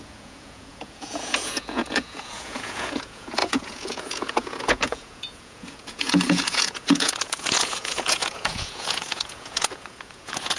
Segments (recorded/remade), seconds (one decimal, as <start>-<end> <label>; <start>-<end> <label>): 0.0-10.6 remade

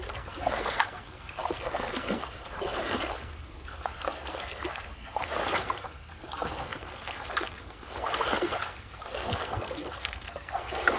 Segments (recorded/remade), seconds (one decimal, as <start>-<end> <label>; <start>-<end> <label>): 0.0-11.0 remade

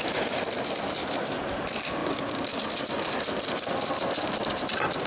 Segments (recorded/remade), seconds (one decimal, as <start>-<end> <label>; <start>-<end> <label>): 0.0-5.1 recorded

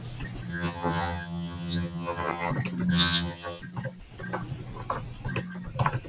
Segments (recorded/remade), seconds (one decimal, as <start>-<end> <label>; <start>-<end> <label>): 0.0-0.5 recorded; 0.5-2.5 remade; 2.5-2.9 recorded; 2.9-3.6 remade; 3.6-6.1 recorded